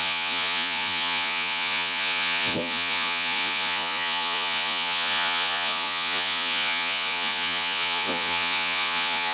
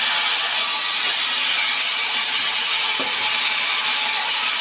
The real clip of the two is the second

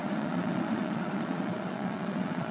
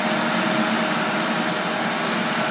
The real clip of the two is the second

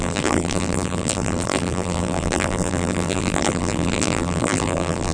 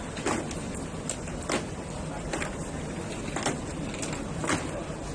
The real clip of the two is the second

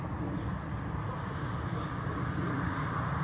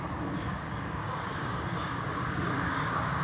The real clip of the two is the first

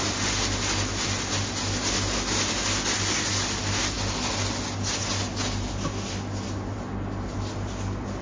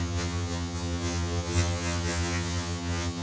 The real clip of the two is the first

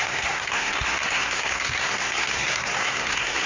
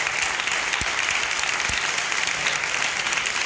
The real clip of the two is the second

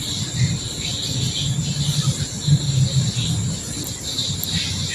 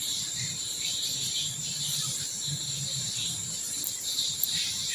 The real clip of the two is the first